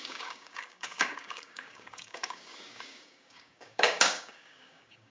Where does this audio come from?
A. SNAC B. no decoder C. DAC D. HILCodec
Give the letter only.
C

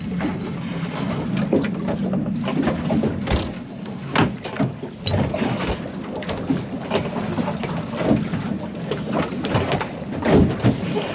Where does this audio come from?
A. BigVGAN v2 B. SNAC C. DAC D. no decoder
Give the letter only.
D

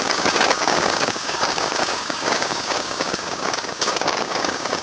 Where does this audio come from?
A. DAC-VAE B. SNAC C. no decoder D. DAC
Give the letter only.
D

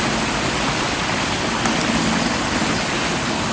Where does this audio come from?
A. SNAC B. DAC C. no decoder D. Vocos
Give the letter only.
C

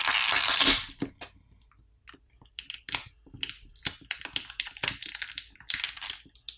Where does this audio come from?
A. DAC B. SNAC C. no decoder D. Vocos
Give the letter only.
C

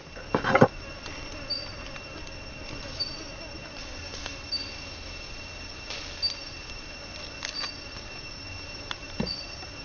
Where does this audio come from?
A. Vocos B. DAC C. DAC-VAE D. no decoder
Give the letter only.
D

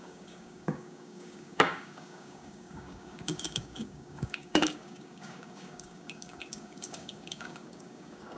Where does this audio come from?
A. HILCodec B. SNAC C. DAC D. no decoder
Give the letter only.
C